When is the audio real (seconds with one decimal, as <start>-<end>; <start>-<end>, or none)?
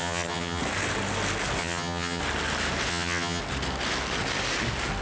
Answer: 0.6-1.6; 2.2-2.9; 3.4-5.0